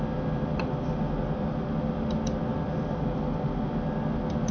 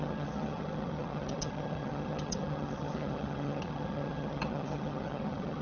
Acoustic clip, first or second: first